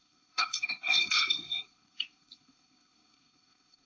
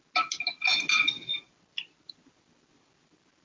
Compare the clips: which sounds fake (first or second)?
first